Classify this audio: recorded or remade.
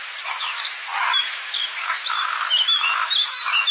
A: remade